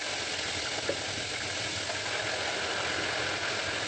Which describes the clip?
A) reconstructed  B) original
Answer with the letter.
B